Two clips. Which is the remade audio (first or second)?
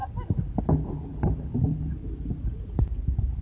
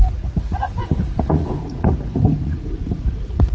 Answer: second